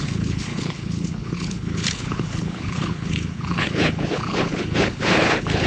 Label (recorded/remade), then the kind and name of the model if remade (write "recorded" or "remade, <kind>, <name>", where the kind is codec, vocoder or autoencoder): remade, codec, HILCodec